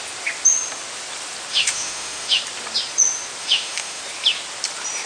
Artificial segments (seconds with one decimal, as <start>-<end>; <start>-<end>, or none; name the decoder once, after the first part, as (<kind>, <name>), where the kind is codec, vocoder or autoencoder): 1.5-2.4 (autoencoder, DAC-VAE); 3.4-4.0